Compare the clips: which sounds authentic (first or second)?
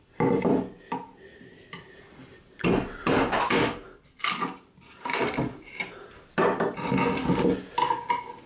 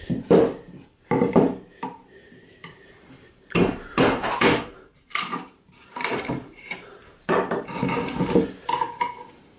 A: first